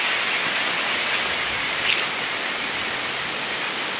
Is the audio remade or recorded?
recorded